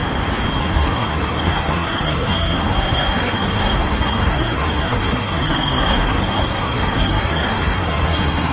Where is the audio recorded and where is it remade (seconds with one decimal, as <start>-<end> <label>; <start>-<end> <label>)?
0.0-0.6 recorded; 0.6-8.5 remade